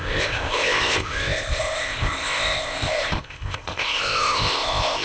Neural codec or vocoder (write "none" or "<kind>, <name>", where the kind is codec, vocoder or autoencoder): codec, ZipCodec